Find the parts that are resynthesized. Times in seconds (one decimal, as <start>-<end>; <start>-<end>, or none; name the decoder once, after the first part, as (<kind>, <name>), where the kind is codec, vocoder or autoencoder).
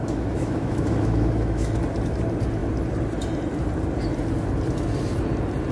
0.0-1.7 (autoencoder, DAC-VAE)